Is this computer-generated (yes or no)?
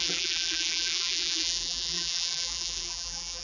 yes